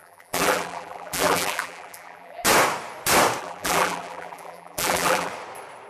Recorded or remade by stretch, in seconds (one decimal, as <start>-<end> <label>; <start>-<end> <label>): 0.0-2.4 remade; 2.4-3.4 recorded; 3.4-5.3 remade; 5.3-5.9 recorded